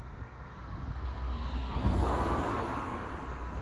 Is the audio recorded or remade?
remade